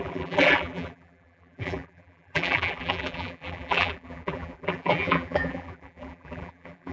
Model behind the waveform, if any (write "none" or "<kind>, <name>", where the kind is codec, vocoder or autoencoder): vocoder, BigVGAN v2